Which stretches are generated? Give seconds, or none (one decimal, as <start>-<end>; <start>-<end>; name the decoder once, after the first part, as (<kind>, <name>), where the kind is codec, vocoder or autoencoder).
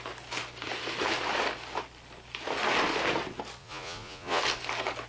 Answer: 3.6-4.4 (vocoder, Vocos)